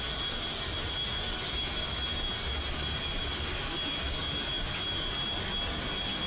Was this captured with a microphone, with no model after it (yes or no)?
yes